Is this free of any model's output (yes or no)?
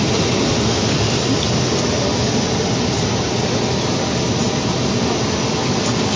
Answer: yes